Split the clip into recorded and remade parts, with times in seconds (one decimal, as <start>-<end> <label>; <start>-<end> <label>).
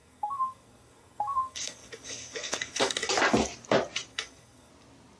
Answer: 0.0-3.1 remade; 3.1-4.1 recorded; 4.1-4.7 remade; 4.7-5.2 recorded